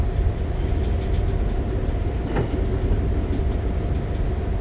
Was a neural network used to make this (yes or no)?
no